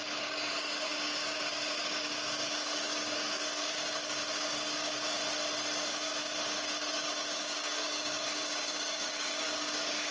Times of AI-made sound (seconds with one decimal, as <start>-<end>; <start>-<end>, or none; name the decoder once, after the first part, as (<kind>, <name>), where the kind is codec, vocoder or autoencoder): 0.0-5.2 (codec, DAC); 5.9-10.1